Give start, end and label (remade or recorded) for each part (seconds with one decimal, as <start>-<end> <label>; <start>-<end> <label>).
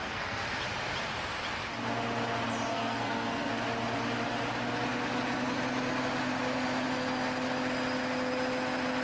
0.0-0.6 remade; 0.6-2.7 recorded; 2.7-3.5 remade; 3.5-9.0 recorded